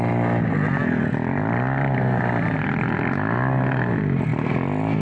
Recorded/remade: recorded